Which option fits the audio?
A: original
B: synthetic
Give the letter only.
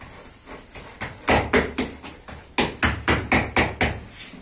A